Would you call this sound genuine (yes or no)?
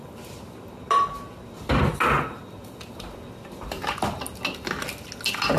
yes